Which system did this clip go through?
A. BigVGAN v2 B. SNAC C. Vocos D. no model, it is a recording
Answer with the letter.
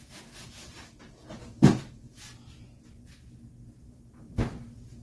D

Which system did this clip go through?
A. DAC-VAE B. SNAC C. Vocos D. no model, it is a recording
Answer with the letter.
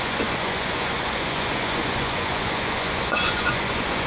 C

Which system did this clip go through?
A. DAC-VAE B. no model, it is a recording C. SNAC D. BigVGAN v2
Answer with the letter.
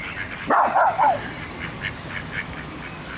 B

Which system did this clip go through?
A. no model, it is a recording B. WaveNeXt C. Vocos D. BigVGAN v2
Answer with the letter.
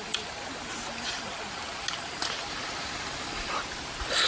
A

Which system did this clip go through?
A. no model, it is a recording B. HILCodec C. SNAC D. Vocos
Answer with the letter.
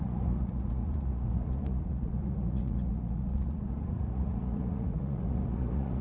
D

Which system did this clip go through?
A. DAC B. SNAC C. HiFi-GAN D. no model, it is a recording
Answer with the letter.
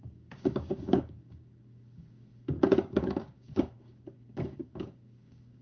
A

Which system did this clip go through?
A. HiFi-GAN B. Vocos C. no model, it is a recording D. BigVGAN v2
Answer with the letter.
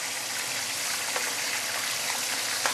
C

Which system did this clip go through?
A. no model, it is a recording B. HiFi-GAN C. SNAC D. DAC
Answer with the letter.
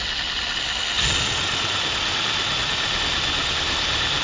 A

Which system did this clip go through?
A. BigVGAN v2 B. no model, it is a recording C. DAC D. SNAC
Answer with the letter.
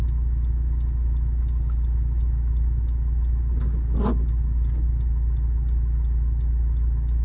B